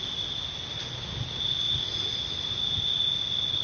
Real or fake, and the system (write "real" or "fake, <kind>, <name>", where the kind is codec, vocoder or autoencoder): real